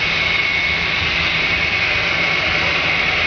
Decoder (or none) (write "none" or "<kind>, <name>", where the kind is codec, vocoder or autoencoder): none